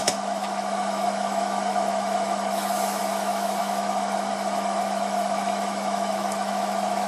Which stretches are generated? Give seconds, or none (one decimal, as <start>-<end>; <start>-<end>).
0.0-7.1